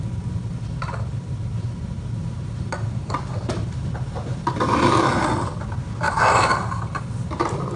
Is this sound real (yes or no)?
yes